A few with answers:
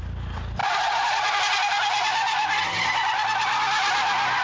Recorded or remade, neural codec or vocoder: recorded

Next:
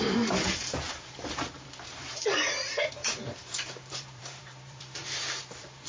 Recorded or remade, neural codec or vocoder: remade, vocoder, BigVGAN v2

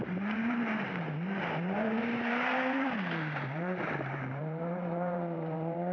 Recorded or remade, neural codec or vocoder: remade, vocoder, BigVGAN v2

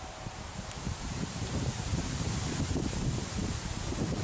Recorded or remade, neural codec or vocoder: remade, vocoder, BigVGAN v2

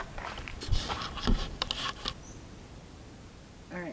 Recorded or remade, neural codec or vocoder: recorded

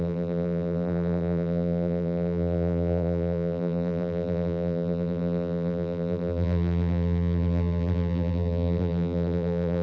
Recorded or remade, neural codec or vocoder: remade, vocoder, BigVGAN v2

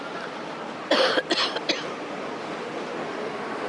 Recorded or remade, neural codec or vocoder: recorded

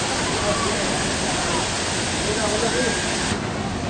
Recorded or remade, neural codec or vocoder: recorded